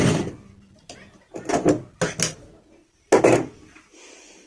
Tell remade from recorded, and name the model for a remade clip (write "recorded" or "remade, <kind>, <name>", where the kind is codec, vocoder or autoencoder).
recorded